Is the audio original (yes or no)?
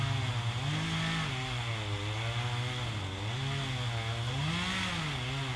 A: yes